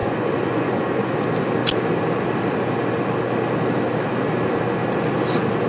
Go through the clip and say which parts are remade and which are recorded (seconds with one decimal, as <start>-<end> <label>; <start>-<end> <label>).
0.0-1.1 remade; 1.1-5.7 recorded